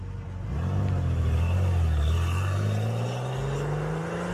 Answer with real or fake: real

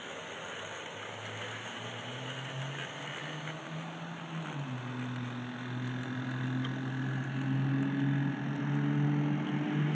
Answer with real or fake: real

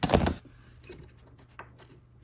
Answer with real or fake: real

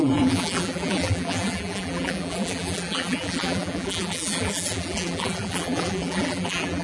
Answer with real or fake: fake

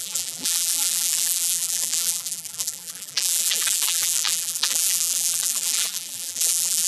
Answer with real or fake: fake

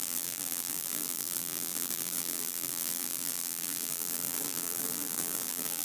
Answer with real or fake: fake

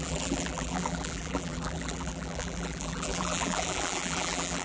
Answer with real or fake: fake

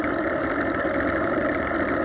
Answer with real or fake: fake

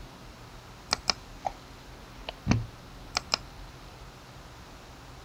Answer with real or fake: real